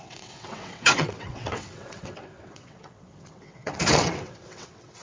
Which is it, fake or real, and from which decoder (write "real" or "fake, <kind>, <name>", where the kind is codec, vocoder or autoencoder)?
fake, vocoder, WaveNeXt